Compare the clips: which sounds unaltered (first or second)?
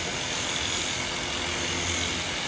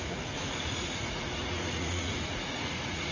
first